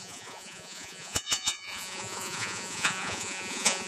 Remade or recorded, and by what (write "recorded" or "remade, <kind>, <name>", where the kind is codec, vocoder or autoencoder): remade, vocoder, Vocos